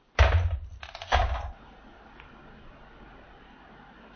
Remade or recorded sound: recorded